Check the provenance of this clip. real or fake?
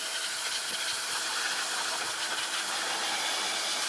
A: real